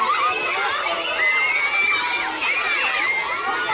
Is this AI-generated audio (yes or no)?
no